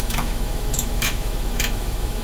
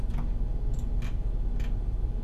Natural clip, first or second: second